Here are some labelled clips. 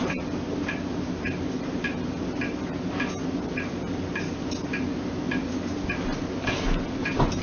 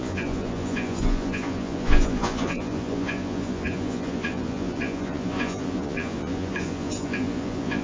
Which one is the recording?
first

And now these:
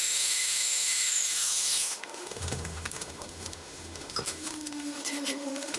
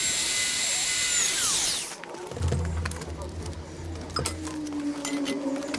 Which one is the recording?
second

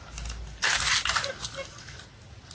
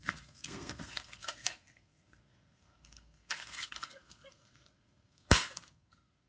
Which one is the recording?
first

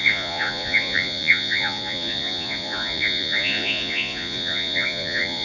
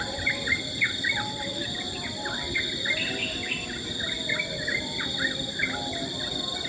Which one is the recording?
second